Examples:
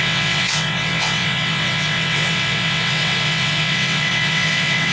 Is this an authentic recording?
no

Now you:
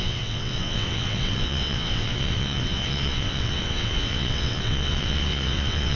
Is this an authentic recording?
no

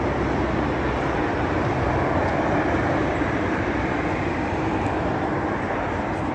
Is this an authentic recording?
yes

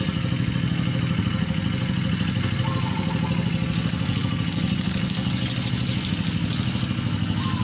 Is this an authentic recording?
yes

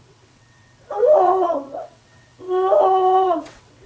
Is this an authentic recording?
no